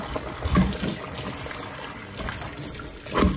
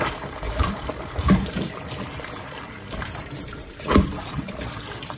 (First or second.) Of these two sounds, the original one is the first